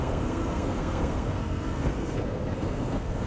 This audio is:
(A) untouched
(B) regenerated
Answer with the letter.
B